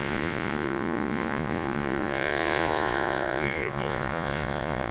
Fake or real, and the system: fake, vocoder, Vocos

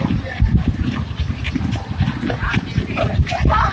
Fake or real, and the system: real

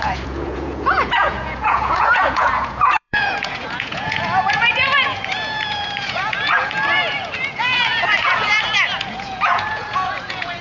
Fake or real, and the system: fake, vocoder, Vocos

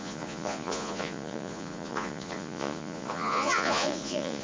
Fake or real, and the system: fake, vocoder, Vocos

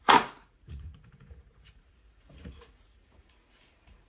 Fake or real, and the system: fake, vocoder, Vocos